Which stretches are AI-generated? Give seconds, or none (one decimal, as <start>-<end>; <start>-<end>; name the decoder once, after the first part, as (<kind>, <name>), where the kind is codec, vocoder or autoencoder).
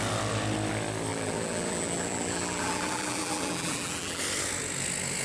1.1-4.2 (vocoder, BigVGAN v2)